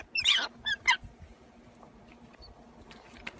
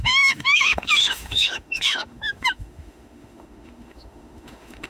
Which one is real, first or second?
first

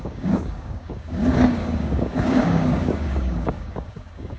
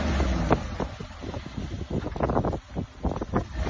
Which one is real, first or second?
second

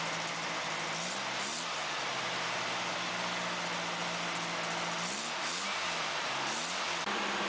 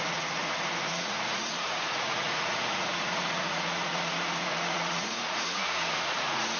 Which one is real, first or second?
first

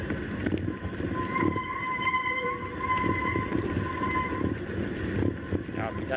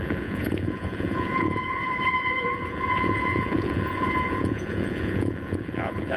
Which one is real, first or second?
first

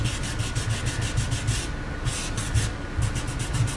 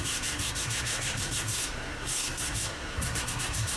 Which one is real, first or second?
first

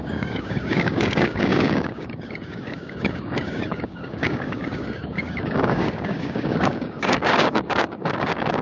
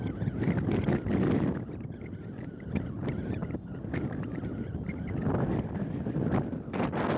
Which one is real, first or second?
second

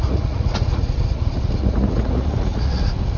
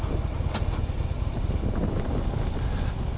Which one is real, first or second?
second